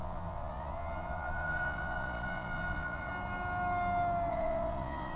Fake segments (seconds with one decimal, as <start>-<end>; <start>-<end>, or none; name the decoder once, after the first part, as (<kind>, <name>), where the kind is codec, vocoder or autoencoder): 0.0-3.1 (vocoder, Vocos); 4.3-5.2